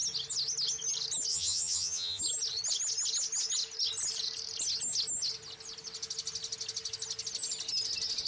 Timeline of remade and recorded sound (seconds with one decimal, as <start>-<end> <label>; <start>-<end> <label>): 0.0-1.3 recorded; 1.3-2.2 remade; 2.2-8.3 recorded